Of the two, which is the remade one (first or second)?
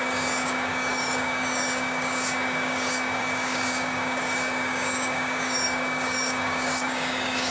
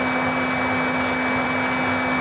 first